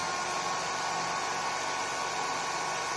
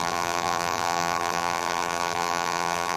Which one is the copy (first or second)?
second